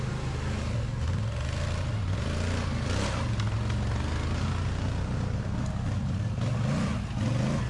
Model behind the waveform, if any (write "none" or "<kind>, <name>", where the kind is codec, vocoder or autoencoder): none